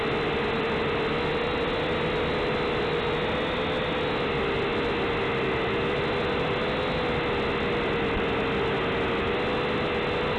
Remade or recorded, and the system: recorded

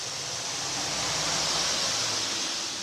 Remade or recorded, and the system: recorded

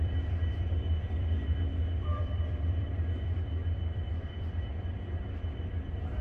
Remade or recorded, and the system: remade, vocoder, BigVGAN v2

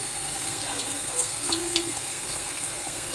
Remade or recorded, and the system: remade, codec, SNAC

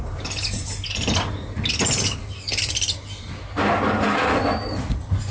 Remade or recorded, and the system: recorded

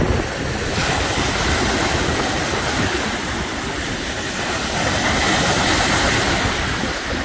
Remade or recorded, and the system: recorded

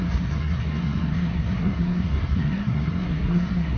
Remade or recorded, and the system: remade, codec, SNAC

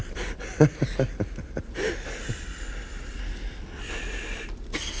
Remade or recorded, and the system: recorded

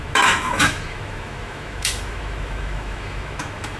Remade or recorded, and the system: remade, autoencoder, DAC-VAE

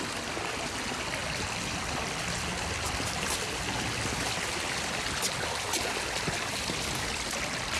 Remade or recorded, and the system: recorded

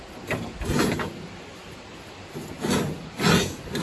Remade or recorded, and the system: recorded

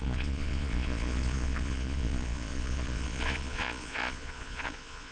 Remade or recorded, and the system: remade, vocoder, Vocos